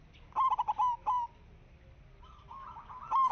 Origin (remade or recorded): recorded